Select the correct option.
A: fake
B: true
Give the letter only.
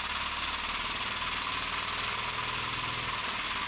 B